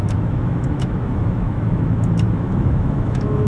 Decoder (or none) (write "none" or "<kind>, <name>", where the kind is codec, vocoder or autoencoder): autoencoder, DAC-VAE